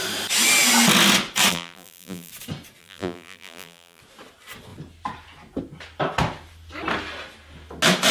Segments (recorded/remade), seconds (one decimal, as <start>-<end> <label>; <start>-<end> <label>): 0.0-1.5 recorded; 1.5-2.3 remade; 2.3-2.8 recorded; 2.8-4.0 remade; 4.0-8.1 recorded